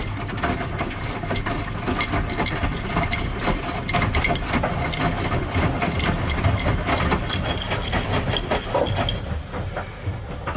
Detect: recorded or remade recorded